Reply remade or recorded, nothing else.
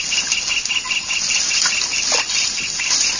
recorded